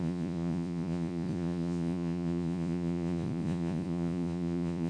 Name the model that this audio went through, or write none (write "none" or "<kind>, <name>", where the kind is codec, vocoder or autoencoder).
vocoder, Vocos